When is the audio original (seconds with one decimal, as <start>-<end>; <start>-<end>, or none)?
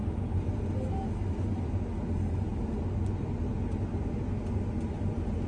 0.0-5.5